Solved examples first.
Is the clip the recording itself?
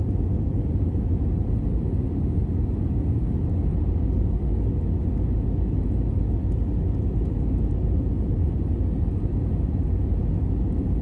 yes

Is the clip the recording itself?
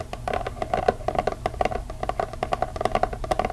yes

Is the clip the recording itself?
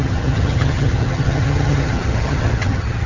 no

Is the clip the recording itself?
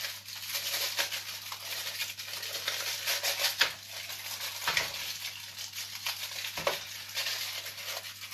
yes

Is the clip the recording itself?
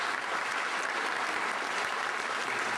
yes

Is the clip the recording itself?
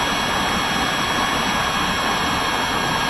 yes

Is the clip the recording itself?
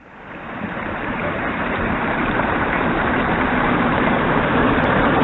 no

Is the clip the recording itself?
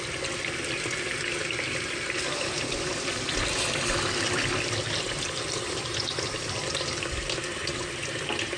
yes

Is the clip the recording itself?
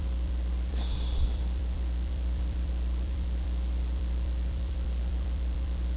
no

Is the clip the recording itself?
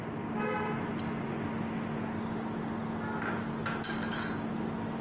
yes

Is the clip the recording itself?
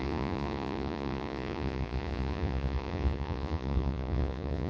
no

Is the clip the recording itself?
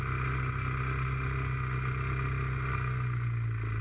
yes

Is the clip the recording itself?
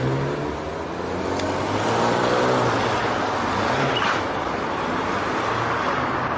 yes